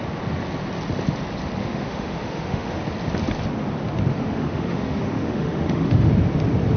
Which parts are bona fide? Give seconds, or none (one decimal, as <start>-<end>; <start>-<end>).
0.0-1.6; 2.8-4.1; 6.1-6.8